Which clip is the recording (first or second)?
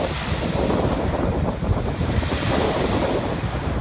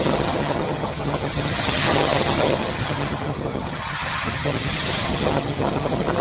first